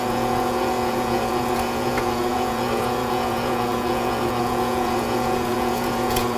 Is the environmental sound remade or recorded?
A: remade